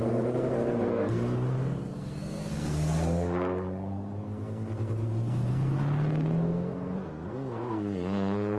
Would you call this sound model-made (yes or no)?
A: yes